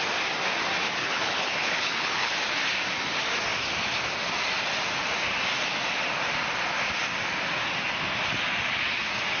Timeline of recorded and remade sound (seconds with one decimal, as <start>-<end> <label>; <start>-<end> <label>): 0.0-1.0 recorded; 1.0-2.3 remade; 2.3-9.4 recorded